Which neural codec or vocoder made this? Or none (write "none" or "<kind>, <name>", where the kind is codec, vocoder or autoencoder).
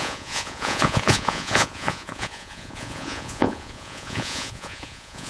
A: vocoder, Vocos